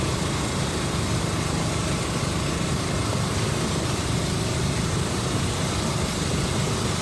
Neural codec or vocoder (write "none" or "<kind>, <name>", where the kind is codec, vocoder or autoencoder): none